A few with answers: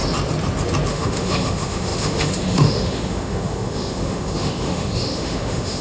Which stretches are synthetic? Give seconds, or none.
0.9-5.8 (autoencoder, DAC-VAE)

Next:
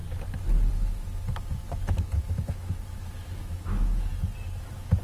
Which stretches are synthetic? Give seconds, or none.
0.7-4.1 (autoencoder, DAC-VAE); 4.6-5.0

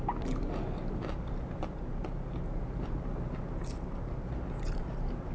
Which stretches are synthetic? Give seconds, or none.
none

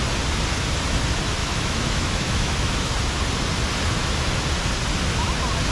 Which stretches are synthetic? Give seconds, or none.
1.4-2.9 (autoencoder, DAC-VAE)

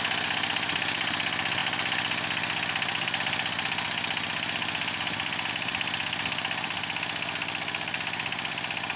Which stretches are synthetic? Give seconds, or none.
none

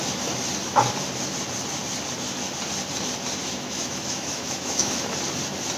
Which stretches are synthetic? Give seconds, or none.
3.4-5.1 (autoencoder, DAC-VAE)

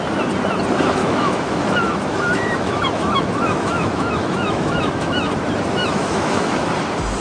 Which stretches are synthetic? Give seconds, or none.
1.0-5.3 (autoencoder, DAC-VAE); 5.8-6.7